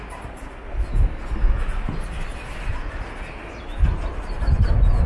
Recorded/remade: recorded